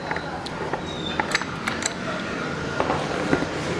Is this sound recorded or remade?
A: remade